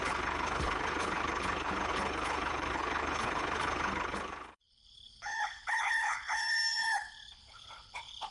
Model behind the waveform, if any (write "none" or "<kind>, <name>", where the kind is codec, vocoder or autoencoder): codec, HILCodec